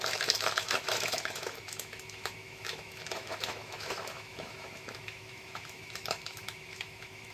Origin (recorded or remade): remade